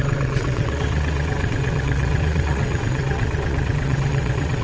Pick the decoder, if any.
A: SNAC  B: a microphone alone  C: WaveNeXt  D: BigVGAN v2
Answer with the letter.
C